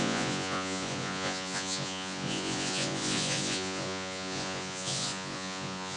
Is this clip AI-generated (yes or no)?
yes